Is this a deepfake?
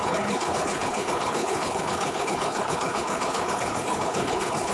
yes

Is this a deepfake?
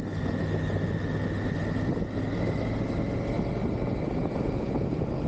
no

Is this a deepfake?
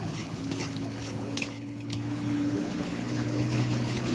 yes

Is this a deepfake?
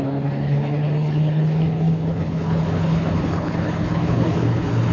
yes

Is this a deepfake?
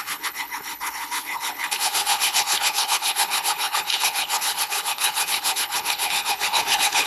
yes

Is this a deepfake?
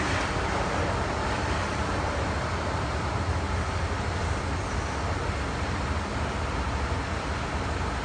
no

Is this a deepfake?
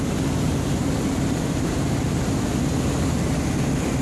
no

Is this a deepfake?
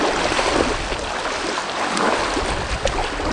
no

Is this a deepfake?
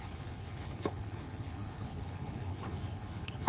yes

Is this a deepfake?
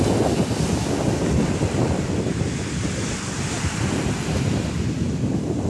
no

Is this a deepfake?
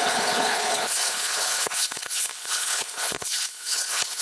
yes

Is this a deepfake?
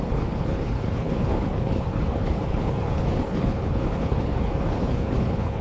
yes